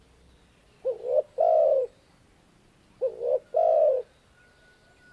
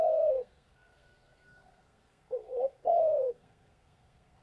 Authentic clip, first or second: first